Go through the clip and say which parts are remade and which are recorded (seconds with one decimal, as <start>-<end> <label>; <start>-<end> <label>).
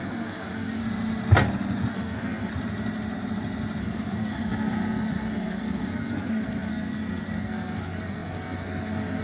0.0-0.8 remade; 0.8-1.9 recorded; 1.9-2.5 remade; 2.5-3.8 recorded; 3.8-9.2 remade